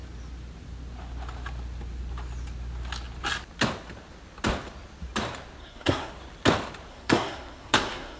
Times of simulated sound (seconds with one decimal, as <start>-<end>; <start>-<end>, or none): 5.6-6.1; 6.9-8.2